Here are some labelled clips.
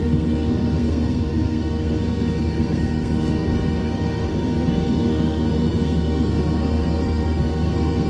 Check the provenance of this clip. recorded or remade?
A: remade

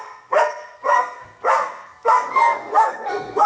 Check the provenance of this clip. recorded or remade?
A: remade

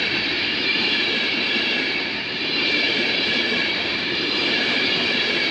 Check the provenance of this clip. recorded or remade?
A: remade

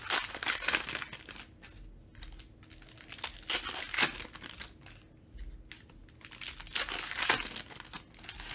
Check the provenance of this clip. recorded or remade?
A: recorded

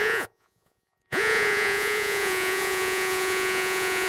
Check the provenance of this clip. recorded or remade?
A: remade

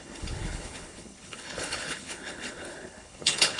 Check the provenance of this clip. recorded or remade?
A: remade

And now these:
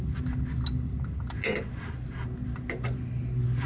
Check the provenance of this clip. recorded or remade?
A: recorded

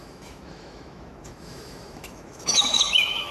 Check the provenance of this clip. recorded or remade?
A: remade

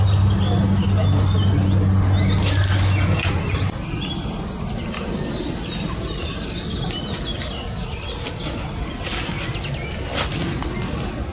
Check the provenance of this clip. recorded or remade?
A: recorded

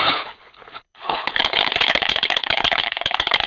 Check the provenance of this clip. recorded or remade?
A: remade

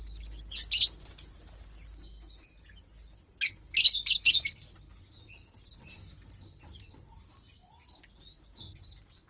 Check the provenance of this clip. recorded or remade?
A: recorded